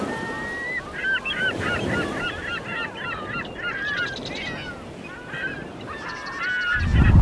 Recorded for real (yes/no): yes